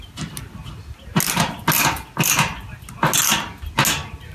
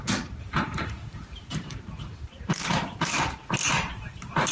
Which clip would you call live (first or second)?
first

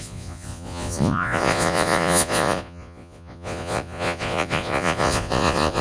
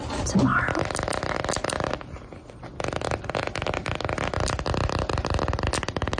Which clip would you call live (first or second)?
second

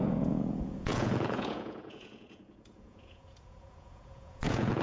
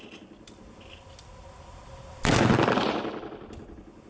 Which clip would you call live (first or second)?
second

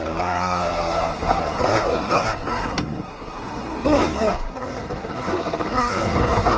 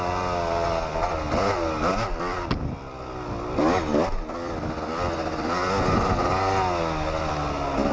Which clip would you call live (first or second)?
second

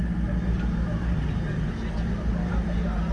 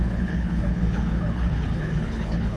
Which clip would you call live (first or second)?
first